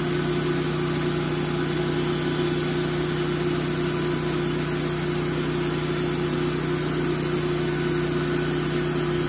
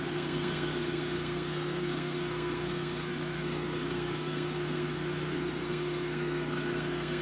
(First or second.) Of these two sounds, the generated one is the second